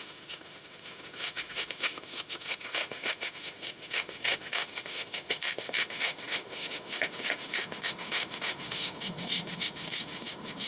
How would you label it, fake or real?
fake